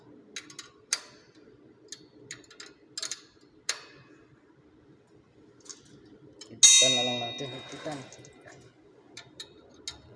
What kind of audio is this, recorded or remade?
recorded